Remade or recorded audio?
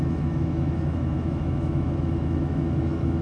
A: remade